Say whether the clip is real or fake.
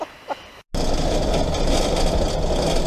real